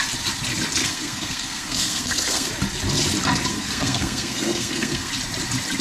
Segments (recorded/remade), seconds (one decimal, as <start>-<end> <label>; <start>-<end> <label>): 0.0-0.8 recorded; 0.8-2.5 remade; 2.5-3.5 recorded; 3.5-5.1 remade; 5.1-5.8 recorded